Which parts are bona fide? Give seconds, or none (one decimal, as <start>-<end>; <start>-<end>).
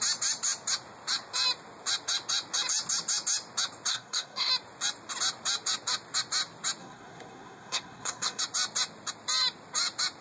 0.0-3.9; 4.5-6.8; 8.4-10.2